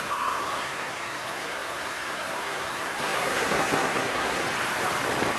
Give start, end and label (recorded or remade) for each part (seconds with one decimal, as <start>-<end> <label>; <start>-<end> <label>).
0.0-4.4 remade; 4.4-5.4 recorded